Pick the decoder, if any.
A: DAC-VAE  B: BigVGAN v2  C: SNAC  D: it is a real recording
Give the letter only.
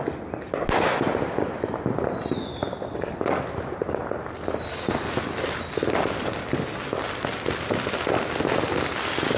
D